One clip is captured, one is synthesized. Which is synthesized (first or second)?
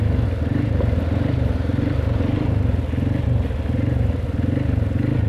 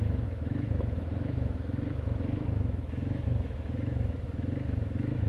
second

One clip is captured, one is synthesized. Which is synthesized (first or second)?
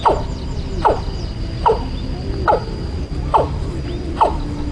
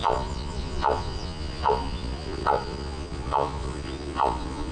second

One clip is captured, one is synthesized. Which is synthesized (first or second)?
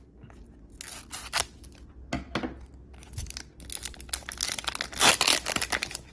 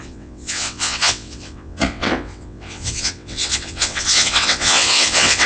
second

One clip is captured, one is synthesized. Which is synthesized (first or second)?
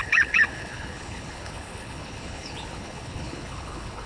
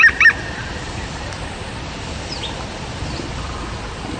first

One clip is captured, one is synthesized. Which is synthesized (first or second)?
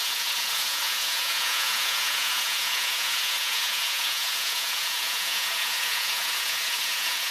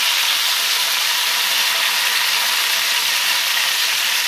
first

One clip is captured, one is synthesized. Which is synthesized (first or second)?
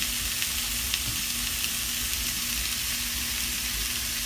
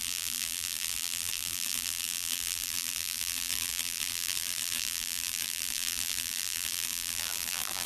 second